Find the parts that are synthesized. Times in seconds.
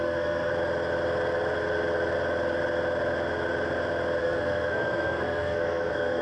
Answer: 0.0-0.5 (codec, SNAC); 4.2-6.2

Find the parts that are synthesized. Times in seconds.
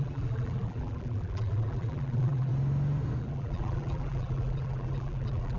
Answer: 0.0-2.5 (vocoder, BigVGAN v2); 3.2-5.6